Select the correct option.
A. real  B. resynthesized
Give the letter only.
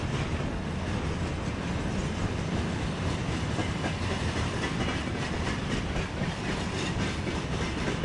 A